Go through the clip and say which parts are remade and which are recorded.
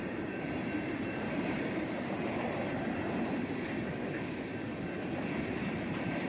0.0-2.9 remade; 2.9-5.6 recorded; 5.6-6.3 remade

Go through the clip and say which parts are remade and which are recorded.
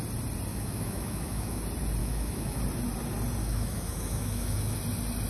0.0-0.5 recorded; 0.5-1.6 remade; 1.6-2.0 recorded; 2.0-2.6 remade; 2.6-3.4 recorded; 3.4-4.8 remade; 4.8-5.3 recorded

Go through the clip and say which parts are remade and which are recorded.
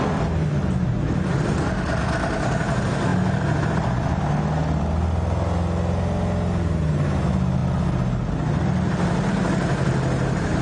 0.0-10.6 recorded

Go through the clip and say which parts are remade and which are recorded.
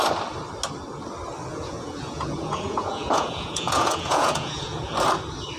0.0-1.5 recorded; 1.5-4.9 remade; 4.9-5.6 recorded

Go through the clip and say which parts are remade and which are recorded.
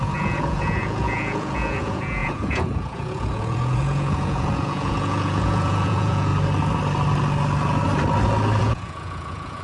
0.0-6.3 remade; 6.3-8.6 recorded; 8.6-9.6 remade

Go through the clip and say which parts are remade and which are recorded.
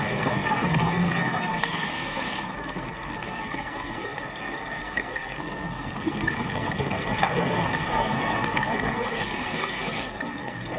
0.0-10.8 remade